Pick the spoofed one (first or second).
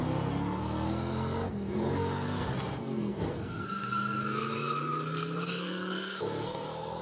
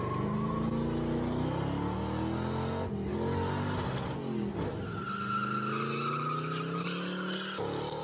first